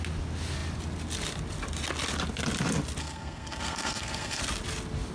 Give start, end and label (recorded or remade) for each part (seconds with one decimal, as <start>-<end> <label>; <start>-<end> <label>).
0.0-3.0 recorded; 3.0-4.4 remade; 4.4-5.1 recorded